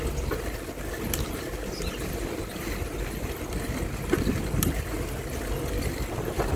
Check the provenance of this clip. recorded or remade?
recorded